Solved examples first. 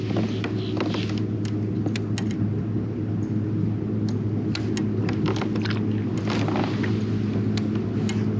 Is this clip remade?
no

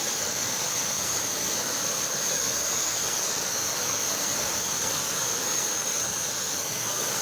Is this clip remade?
yes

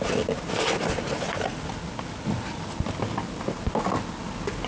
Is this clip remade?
no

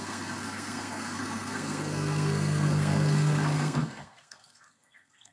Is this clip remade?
yes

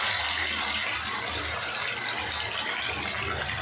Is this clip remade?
no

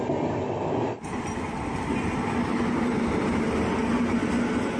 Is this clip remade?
no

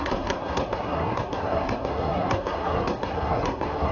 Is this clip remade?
yes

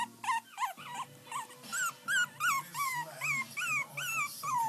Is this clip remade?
no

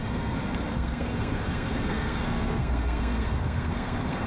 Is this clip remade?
yes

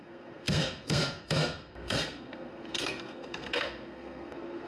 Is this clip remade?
yes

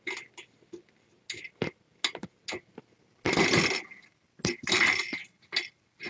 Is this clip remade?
no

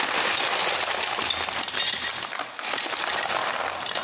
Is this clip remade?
no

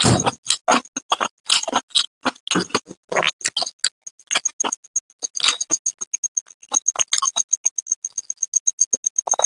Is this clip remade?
no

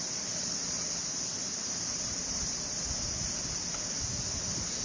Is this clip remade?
no